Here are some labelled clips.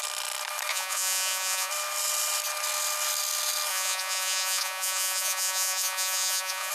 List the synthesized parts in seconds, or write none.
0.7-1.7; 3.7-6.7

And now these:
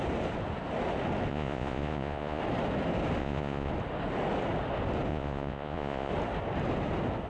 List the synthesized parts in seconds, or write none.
1.3-2.4; 3.2-3.7; 5.1-6.1

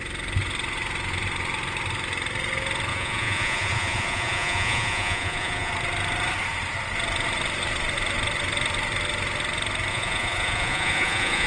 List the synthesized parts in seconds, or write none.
2.9-5.7; 9.9-11.5

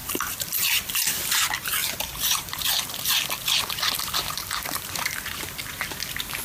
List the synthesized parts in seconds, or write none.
0.0-1.3; 1.8-5.6